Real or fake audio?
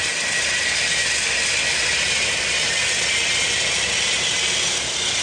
real